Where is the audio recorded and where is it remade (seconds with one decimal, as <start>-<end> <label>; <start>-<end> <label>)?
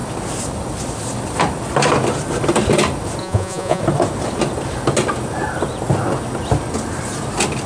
0.0-3.2 recorded; 3.2-3.8 remade; 3.8-7.7 recorded